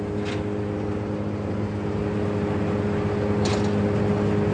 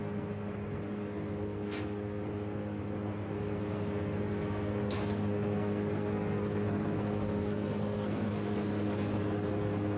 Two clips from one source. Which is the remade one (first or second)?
second